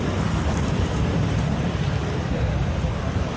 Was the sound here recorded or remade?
remade